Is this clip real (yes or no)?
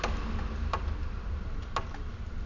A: yes